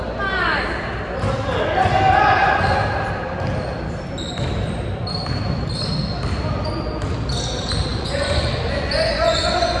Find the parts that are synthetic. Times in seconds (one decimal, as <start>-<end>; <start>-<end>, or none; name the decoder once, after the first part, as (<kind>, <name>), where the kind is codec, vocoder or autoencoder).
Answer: 7.9-9.8 (vocoder, Vocos)